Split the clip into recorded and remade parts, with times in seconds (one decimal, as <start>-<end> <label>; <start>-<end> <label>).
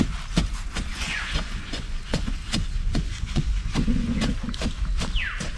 0.0-0.9 recorded; 0.9-4.3 remade; 4.3-5.6 recorded